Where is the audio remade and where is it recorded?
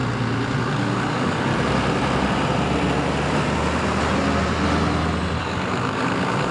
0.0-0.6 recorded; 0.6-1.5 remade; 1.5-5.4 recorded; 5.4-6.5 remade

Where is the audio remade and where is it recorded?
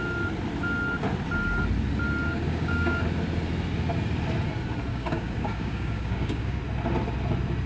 0.0-2.3 recorded; 2.3-3.0 remade; 3.0-4.9 recorded; 4.9-6.6 remade; 6.6-7.7 recorded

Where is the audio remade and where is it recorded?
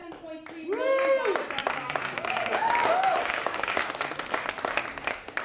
0.0-1.6 recorded; 1.6-3.9 remade; 3.9-4.8 recorded; 4.8-5.4 remade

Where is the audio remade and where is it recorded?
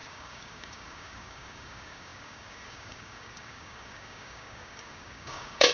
0.0-5.7 remade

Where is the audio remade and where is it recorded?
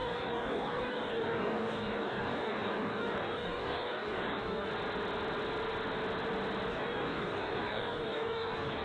0.0-4.7 remade; 4.7-6.7 recorded; 6.7-8.8 remade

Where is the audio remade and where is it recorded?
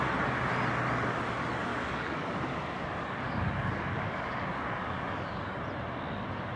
0.0-1.7 recorded; 1.7-5.6 remade; 5.6-6.6 recorded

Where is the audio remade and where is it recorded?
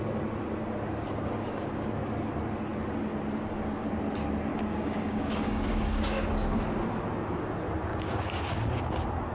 0.0-1.2 recorded; 1.2-2.0 remade; 2.0-4.5 recorded; 4.5-6.6 remade; 6.6-7.9 recorded; 7.9-8.8 remade; 8.8-9.3 recorded